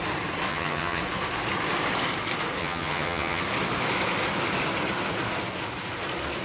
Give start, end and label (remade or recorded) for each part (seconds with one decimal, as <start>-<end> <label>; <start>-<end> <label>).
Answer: 0.0-0.5 recorded; 0.5-1.0 remade; 1.0-2.6 recorded; 2.6-3.4 remade; 3.4-6.4 recorded